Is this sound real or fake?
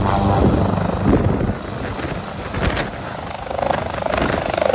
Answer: real